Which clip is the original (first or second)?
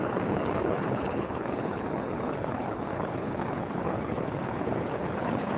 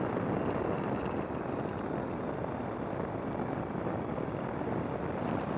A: second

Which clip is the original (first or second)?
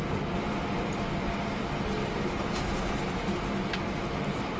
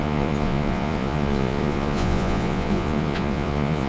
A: first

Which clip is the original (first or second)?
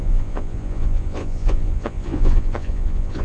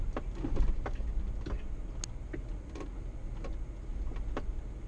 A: second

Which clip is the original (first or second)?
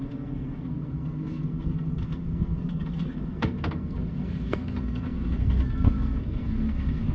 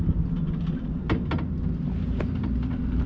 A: second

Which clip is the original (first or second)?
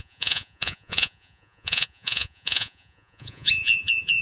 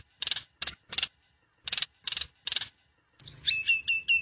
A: second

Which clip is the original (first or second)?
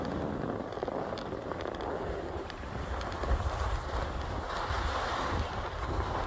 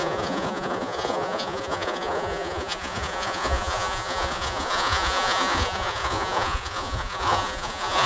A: first